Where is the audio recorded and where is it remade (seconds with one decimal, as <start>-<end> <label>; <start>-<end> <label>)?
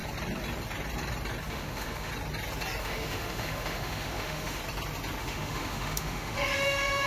0.0-1.5 recorded; 1.5-2.1 remade; 2.1-2.8 recorded; 2.8-4.6 remade; 4.6-5.2 recorded; 5.2-7.1 remade